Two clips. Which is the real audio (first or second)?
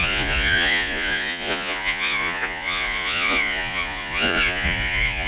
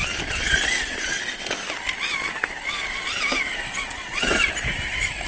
second